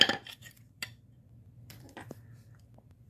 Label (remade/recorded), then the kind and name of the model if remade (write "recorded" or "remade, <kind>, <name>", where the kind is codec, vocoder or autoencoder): remade, vocoder, BigVGAN v2